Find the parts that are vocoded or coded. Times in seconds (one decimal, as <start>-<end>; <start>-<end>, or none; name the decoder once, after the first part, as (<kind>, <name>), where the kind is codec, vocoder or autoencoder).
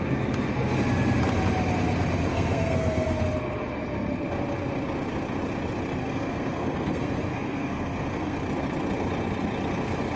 2.3-3.2 (codec, SNAC); 6.0-8.4